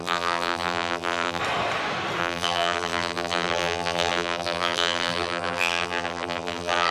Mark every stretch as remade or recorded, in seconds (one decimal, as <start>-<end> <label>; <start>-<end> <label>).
0.0-1.4 remade; 1.4-2.2 recorded; 2.2-6.9 remade

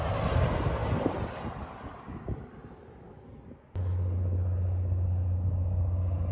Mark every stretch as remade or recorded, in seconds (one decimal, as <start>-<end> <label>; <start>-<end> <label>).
0.0-6.3 recorded

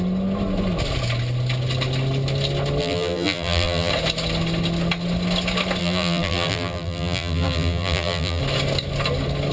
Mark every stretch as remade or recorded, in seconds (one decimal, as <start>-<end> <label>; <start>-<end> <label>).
0.0-2.8 recorded; 2.8-3.9 remade; 3.9-5.8 recorded; 5.8-8.4 remade; 8.4-9.5 recorded

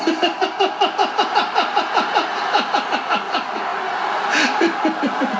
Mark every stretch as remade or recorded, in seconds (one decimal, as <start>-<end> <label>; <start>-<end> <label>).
0.0-1.0 recorded; 1.0-2.8 remade; 2.8-3.7 recorded; 3.7-5.4 remade